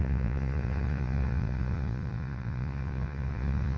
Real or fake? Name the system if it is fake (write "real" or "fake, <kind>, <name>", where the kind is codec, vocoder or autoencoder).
fake, vocoder, Vocos